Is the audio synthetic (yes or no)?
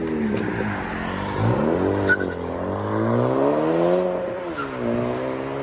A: no